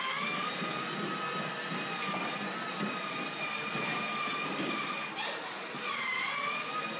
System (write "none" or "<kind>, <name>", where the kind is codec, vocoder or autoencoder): none